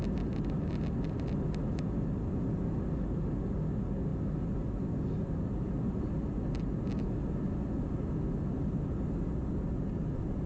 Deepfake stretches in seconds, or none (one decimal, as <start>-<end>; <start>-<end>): none